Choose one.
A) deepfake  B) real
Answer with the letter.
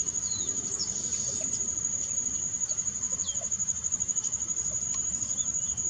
B